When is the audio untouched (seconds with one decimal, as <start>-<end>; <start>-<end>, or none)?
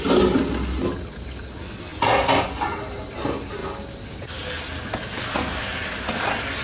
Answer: 0.0-6.6